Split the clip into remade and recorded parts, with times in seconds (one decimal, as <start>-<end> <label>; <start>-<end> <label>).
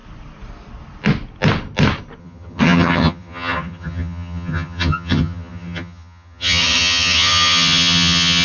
0.0-2.2 recorded; 2.2-8.4 remade